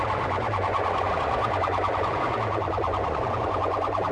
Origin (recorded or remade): remade